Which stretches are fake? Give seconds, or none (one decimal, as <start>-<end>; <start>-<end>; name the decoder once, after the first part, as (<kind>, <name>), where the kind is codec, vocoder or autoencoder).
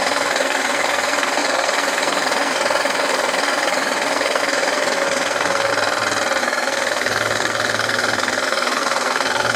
0.0-5.7 (codec, SNAC); 6.4-9.6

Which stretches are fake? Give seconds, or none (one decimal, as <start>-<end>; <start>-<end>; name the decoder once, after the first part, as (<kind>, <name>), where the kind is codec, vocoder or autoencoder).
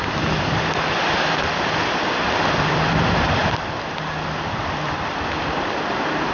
0.0-3.4 (vocoder, BigVGAN v2); 4.6-6.3